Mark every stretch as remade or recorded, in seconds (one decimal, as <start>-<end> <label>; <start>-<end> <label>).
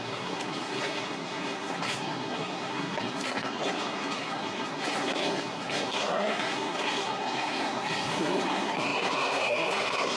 0.0-10.2 remade